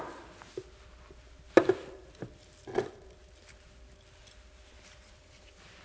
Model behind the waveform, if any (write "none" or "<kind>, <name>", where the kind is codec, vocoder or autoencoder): none